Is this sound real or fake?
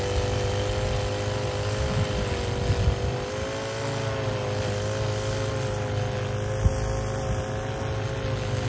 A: real